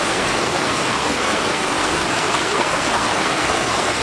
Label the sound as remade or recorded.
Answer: remade